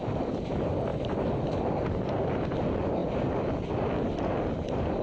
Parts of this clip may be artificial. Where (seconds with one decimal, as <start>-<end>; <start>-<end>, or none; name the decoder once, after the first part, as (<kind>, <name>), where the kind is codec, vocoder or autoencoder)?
none